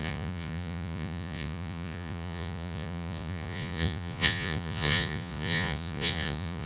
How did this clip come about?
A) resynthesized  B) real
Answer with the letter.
A